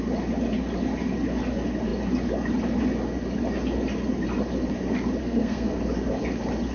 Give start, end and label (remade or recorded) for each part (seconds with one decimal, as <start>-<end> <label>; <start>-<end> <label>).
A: 0.0-5.2 recorded; 5.2-5.8 remade; 5.8-6.7 recorded